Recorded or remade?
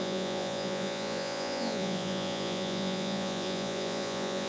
remade